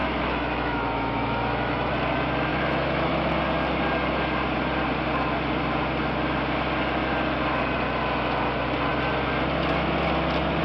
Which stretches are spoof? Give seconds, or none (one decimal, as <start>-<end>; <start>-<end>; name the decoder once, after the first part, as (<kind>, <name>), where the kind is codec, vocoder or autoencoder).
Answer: 0.0-1.9 (autoencoder, DAC-VAE); 2.5-3.1